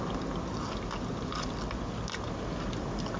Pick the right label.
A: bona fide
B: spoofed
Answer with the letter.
A